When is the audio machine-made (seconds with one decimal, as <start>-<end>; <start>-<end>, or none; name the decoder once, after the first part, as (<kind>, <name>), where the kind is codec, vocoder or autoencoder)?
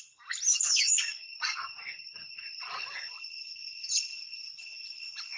0.5-2.6 (codec, DAC)